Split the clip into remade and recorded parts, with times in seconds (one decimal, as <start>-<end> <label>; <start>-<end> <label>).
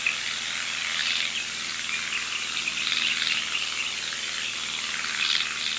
0.0-5.8 recorded